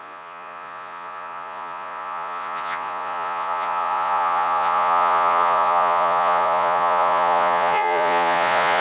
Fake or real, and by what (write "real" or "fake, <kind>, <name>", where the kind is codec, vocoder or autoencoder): fake, vocoder, Vocos